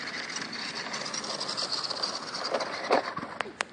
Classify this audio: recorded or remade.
recorded